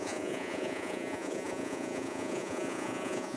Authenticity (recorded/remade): remade